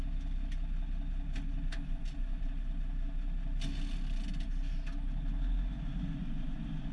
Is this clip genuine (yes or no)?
yes